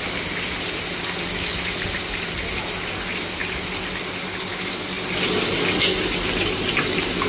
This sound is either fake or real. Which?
real